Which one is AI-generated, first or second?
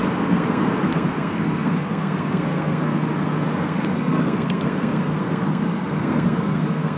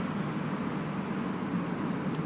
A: first